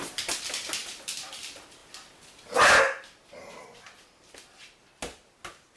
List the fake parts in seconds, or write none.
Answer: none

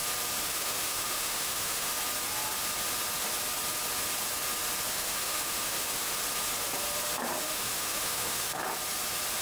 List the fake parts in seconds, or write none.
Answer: 0.5-1.9; 4.9-6.2; 7.4-8.6

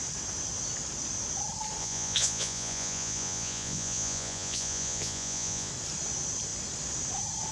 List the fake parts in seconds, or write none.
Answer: 1.8-5.7

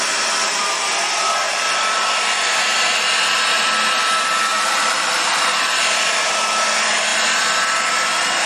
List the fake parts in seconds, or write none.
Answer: 4.5-5.5

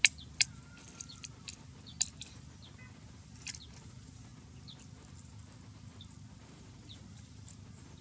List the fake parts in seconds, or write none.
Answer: 6.4-7.0

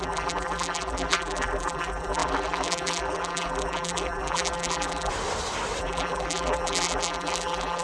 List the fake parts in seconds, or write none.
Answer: 0.0-5.1; 5.8-7.8